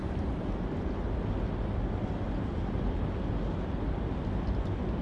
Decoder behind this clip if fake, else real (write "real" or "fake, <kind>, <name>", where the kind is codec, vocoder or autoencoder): real